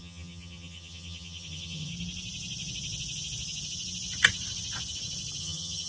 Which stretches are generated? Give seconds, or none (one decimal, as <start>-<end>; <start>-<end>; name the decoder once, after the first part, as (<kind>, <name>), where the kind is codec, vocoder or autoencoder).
0.0-1.9 (vocoder, HiFi-GAN); 5.4-5.9